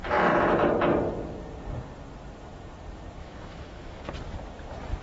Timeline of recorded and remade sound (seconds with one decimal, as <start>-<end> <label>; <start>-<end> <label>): 0.0-3.2 recorded; 3.2-4.0 remade; 4.0-5.0 recorded